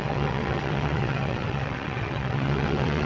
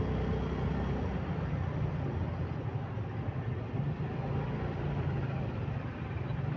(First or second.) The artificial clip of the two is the first